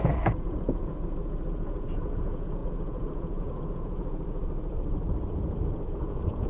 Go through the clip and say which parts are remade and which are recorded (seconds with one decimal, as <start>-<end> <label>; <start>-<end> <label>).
0.0-4.4 remade; 4.4-5.2 recorded; 5.2-6.5 remade